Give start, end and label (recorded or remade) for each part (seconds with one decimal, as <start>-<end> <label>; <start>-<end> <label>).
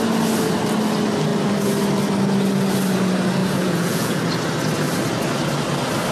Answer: 0.0-3.4 recorded; 3.4-4.2 remade; 4.2-6.1 recorded